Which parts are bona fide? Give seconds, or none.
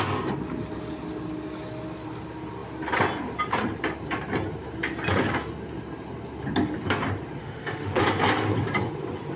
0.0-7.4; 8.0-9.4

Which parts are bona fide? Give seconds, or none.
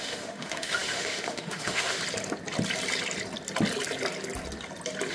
2.0-5.1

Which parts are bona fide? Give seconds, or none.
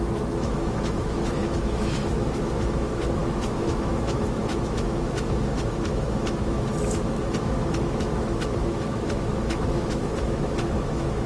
none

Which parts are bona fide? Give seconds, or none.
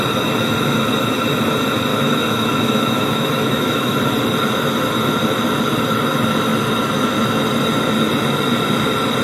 0.0-1.9; 4.0-9.2